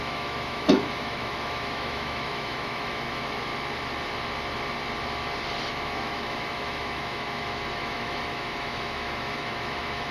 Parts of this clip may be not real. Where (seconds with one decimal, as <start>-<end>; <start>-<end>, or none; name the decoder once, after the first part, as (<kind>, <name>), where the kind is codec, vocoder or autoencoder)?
0.0-3.5 (autoencoder, DAC-VAE); 5.7-10.1